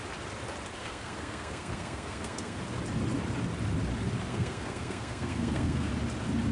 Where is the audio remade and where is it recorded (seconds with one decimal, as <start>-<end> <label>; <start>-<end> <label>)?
0.0-0.8 recorded; 0.8-2.6 remade; 2.6-4.3 recorded; 4.3-5.9 remade; 5.9-6.5 recorded